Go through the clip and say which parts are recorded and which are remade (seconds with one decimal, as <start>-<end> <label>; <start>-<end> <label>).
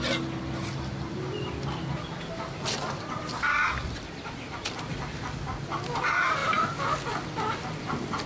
0.0-8.3 recorded